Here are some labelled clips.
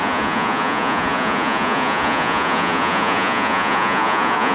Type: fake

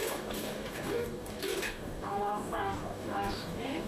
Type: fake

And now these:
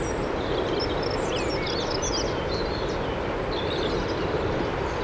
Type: real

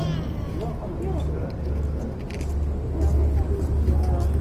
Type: real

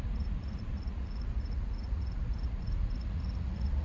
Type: fake